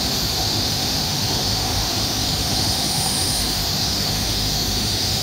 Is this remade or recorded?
remade